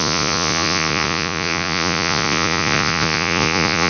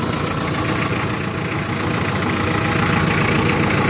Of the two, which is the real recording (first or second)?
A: second